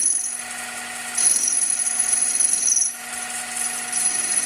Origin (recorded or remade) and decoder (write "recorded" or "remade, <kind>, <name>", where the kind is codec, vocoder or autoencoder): recorded